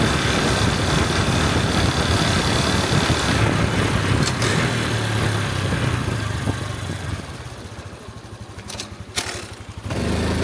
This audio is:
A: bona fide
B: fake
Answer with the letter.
A